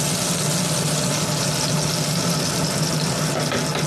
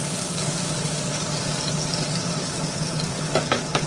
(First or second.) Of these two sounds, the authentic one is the first